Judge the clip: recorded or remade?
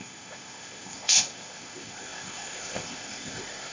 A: remade